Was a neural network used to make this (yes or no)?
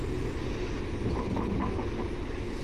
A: no